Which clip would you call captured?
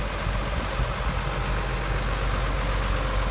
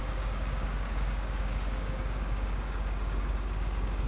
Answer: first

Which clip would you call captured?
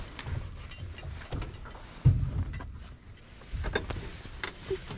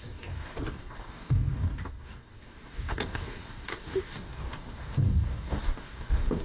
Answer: first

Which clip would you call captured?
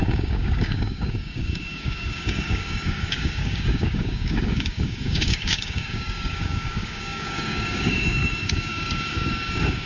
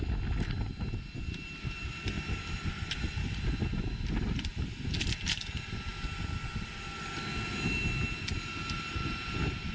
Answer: second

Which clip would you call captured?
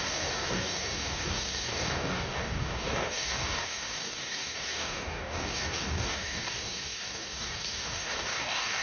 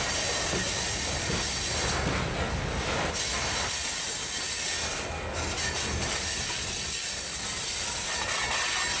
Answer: second